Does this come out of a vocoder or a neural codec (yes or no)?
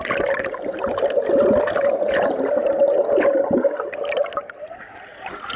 no